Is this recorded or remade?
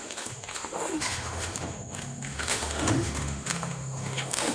remade